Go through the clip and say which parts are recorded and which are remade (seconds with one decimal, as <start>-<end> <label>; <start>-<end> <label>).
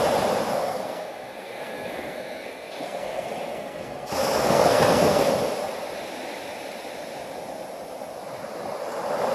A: 0.0-0.5 recorded; 0.5-5.3 remade; 5.3-9.3 recorded